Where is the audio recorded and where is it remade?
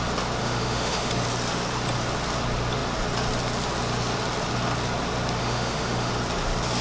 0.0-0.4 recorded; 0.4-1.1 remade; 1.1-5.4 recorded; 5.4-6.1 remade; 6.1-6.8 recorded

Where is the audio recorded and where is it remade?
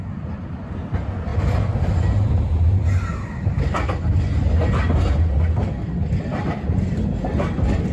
0.0-7.9 recorded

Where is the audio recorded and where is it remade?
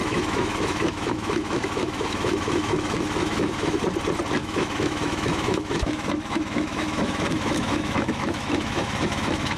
0.0-3.8 remade; 3.8-4.4 recorded; 4.4-9.6 remade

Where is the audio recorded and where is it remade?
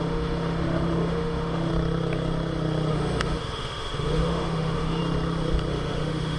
0.0-1.7 remade; 1.7-2.9 recorded; 2.9-5.0 remade; 5.0-5.7 recorded; 5.7-6.4 remade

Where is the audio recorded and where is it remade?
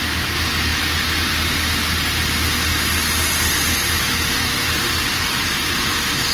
0.0-6.3 recorded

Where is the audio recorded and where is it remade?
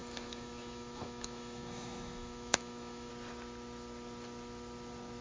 0.0-3.1 remade; 3.1-5.2 recorded